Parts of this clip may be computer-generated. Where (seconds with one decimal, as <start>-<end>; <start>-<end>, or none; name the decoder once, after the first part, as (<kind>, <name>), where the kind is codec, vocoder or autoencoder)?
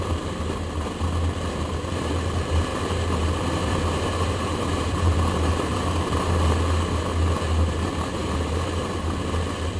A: 2.7-6.6 (vocoder, BigVGAN v2); 8.2-8.8